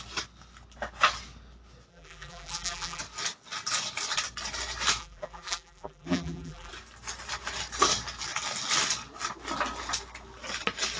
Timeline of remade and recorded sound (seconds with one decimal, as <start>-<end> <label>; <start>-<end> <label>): 0.0-1.9 recorded; 1.9-3.0 remade; 3.0-5.0 recorded; 5.0-6.7 remade; 6.7-11.0 recorded